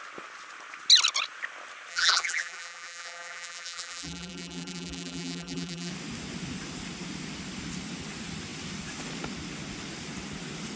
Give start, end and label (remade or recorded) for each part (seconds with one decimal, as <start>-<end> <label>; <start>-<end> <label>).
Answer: 0.0-1.9 recorded; 1.9-5.9 remade; 5.9-10.8 recorded